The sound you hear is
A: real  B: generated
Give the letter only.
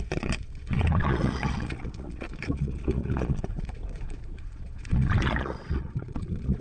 B